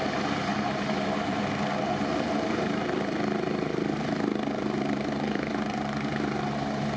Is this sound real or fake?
fake